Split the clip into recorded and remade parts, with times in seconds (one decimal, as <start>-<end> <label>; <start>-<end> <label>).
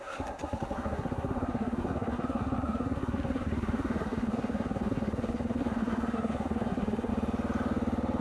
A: 0.0-7.1 remade; 7.1-8.2 recorded